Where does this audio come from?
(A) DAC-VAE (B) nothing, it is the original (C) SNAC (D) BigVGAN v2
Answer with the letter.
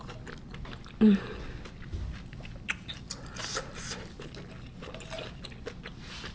B